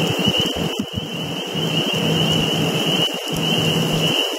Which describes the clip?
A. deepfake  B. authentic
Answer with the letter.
B